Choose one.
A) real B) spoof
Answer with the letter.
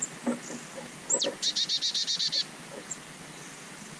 A